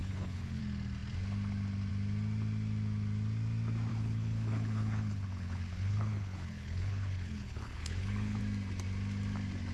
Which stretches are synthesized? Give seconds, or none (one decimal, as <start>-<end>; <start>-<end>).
0.0-0.6; 3.9-8.4